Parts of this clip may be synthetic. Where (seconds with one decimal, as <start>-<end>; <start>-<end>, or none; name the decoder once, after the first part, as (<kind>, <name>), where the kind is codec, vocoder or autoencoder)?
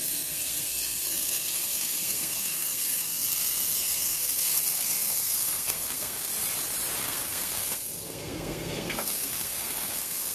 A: 0.0-6.3 (codec, SNAC); 7.0-10.3